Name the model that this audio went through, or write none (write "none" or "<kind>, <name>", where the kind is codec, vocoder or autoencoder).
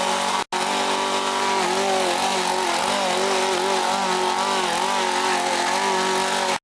none